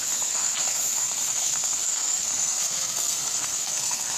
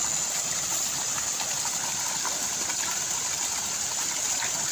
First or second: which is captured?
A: second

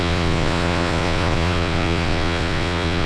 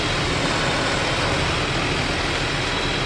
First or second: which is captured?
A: second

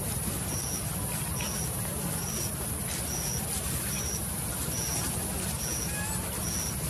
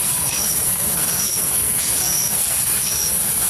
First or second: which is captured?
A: first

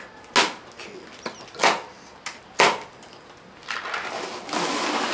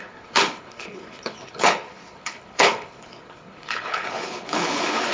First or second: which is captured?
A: first